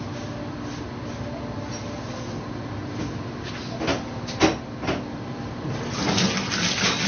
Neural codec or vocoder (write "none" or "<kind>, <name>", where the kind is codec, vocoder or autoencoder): none